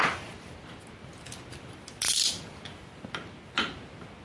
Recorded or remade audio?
recorded